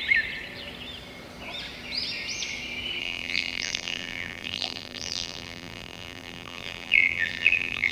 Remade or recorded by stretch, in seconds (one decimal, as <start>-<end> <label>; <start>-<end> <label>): 0.0-3.0 recorded; 3.0-7.9 remade